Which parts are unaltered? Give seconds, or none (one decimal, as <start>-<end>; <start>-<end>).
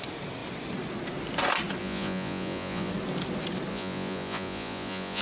0.0-1.8; 2.9-3.7